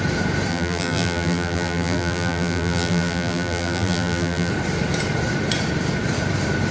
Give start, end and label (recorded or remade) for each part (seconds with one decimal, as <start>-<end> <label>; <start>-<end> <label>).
0.0-0.5 recorded; 0.5-4.5 remade; 4.5-6.7 recorded